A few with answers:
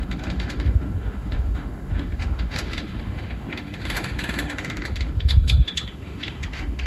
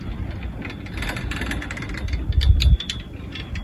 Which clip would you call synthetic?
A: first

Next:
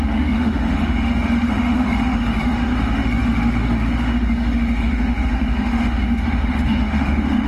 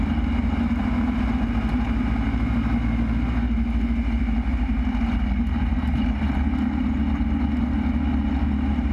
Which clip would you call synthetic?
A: first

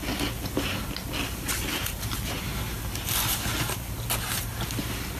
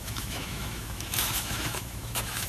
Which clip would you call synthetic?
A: second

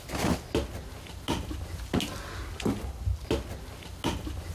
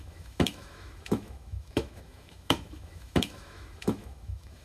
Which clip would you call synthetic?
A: second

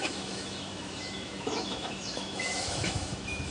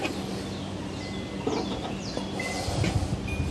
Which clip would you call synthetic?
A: first